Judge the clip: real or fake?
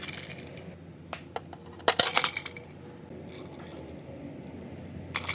real